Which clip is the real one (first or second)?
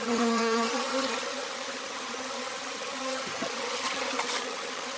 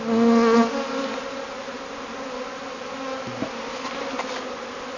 second